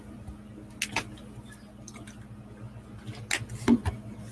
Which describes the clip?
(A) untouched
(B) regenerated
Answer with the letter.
A